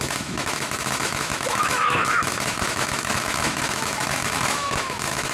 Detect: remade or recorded remade